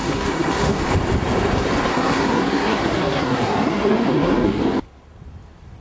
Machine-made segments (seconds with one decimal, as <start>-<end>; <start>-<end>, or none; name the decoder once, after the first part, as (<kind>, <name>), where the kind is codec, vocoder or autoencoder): 0.0-0.8 (codec, SNAC); 1.9-4.6